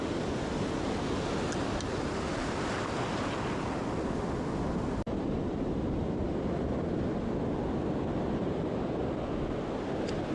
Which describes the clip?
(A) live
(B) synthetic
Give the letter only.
A